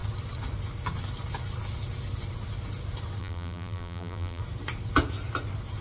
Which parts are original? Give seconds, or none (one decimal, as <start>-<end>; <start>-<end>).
0.0-3.2; 4.4-5.8

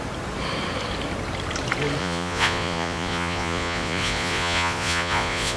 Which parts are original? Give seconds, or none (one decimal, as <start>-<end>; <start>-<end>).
0.0-2.0